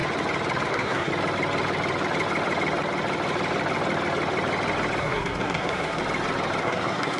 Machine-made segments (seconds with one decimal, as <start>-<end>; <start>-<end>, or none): 0.7-1.1; 5.0-6.0; 6.6-7.2